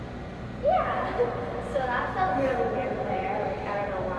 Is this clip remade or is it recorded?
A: recorded